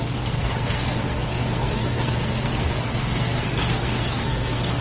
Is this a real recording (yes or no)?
no